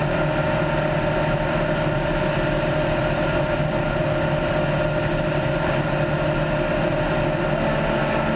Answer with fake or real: real